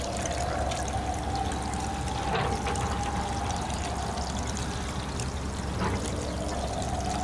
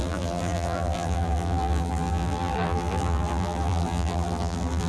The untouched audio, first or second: first